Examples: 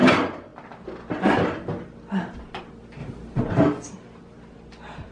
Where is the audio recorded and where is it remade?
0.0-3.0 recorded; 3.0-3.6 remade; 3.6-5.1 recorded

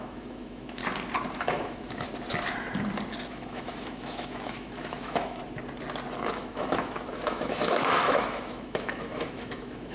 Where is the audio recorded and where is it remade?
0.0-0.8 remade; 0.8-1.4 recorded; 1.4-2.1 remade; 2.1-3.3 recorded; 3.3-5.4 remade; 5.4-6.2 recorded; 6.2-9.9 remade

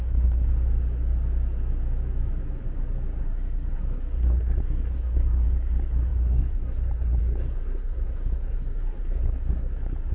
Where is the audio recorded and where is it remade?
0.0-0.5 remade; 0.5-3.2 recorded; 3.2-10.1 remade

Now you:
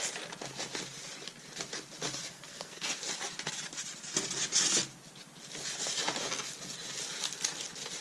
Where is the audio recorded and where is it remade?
0.0-2.2 recorded; 2.2-3.1 remade; 3.1-8.0 recorded